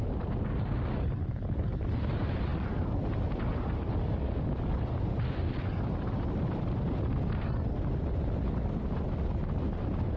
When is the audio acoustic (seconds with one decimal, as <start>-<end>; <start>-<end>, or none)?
0.0-1.2; 1.8-10.2

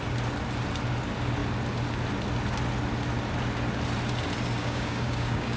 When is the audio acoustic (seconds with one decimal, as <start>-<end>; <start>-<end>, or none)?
0.0-4.6

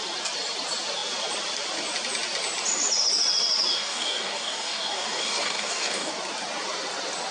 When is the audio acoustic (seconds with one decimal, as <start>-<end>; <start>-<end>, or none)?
0.0-3.7; 6.1-7.3

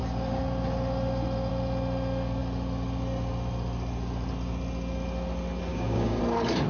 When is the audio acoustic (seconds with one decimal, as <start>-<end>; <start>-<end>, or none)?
0.0-5.7; 6.2-6.7

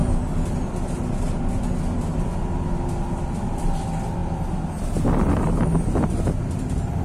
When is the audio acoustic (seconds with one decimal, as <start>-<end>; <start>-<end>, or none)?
0.0-7.0

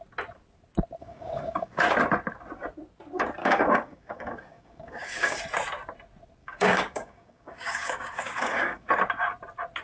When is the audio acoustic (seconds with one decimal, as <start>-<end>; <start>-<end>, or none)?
0.0-1.0; 1.8-3.4; 5.4-6.4; 8.9-9.8

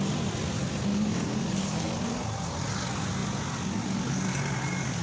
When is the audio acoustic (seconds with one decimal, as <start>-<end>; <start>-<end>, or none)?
0.0-0.9; 2.0-5.0

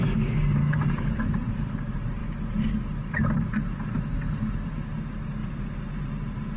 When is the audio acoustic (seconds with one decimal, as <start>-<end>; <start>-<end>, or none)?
0.0-0.6; 1.1-6.6